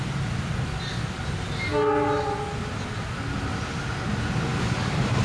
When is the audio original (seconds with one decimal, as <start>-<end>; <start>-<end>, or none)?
0.0-5.2